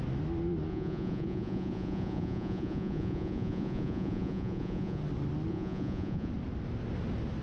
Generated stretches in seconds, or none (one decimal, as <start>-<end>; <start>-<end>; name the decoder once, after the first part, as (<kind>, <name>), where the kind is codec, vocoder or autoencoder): 0.7-5.0 (vocoder, Vocos); 5.5-6.3